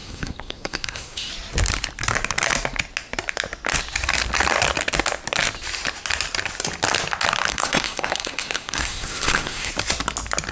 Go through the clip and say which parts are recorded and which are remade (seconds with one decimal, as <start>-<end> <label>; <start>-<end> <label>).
0.0-1.3 remade; 1.3-7.5 recorded; 7.5-9.7 remade; 9.7-10.5 recorded